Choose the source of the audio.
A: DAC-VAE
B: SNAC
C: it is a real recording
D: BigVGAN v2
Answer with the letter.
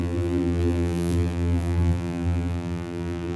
D